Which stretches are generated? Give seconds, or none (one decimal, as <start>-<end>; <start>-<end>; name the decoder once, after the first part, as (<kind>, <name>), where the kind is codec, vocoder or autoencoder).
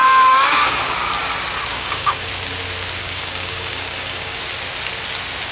0.0-0.8 (codec, DAC); 1.7-2.3; 3.0-4.4